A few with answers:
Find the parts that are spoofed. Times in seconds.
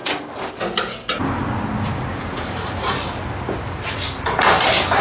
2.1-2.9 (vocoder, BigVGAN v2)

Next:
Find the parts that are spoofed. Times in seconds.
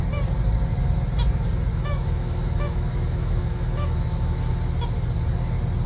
1.7-4.5 (autoencoder, DAC-VAE)